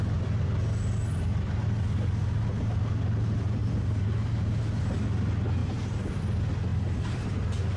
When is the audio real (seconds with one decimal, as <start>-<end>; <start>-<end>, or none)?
0.0-3.6; 4.6-5.6; 6.1-6.7